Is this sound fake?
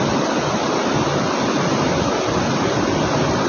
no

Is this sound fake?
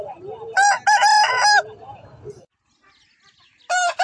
no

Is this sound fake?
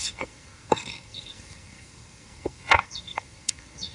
yes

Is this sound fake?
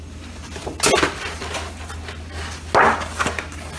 no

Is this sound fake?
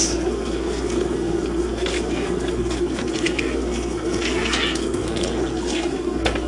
yes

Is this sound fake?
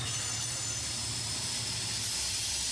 no